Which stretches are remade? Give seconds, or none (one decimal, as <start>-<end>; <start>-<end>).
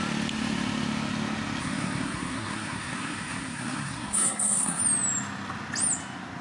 1.6-4.8